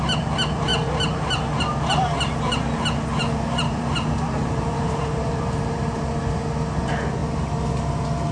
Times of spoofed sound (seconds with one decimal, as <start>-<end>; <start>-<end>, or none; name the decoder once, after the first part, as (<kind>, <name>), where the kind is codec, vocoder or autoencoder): 3.2-6.2 (vocoder, BigVGAN v2)